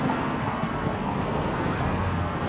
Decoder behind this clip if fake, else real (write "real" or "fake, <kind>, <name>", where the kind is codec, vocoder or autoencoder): fake, codec, SNAC